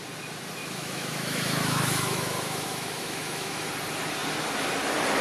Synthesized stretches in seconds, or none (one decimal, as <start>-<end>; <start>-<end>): 0.6-3.7